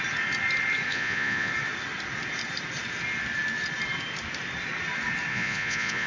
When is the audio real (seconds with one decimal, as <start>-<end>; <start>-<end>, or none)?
0.0-0.9; 1.5-5.3